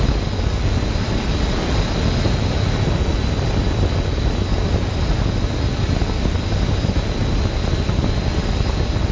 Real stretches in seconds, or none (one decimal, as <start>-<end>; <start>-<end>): 0.0-9.1